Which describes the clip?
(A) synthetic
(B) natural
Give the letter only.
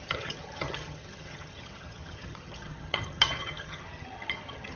A